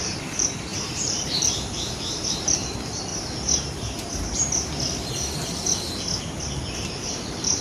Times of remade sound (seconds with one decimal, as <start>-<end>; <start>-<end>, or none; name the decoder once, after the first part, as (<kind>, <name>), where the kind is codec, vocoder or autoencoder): 0.0-3.1 (vocoder, BigVGAN v2); 6.2-7.6